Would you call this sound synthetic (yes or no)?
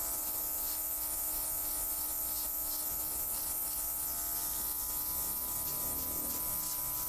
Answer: no